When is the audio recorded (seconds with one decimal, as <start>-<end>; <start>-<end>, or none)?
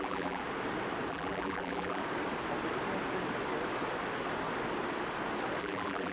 0.4-1.1; 2.0-5.6